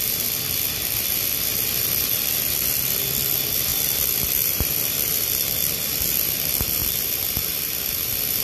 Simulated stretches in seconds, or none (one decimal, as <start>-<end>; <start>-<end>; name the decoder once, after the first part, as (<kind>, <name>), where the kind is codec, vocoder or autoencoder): 3.7-5.3 (vocoder, BigVGAN v2); 6.8-8.4